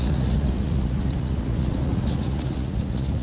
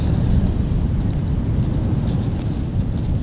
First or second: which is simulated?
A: first